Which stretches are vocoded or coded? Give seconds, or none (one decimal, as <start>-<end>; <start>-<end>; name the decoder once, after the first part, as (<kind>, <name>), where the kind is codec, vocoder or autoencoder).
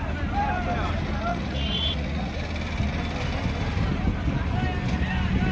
1.3-2.3 (vocoder, Vocos)